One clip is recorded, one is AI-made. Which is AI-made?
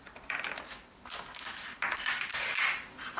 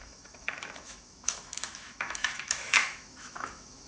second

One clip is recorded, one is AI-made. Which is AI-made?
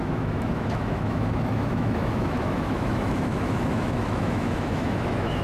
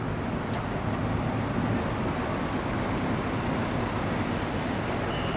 first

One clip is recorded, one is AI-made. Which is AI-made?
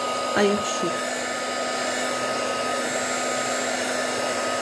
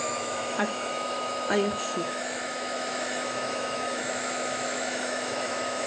second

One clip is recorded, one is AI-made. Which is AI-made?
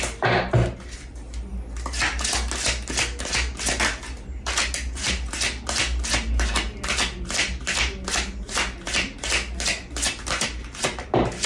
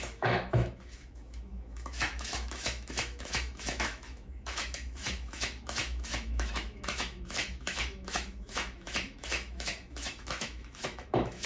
second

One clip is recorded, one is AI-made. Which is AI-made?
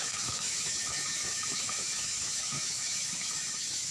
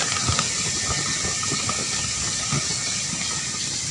first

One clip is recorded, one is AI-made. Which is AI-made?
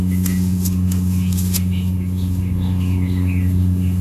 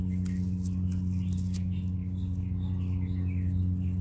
first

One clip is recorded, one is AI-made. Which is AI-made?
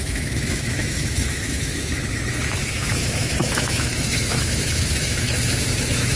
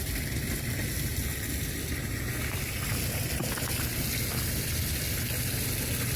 first